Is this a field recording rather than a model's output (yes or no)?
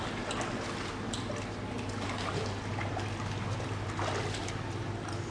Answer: yes